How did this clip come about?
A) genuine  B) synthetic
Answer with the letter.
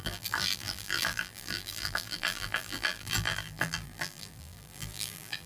B